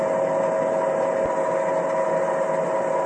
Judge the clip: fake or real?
real